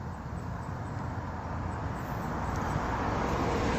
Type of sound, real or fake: real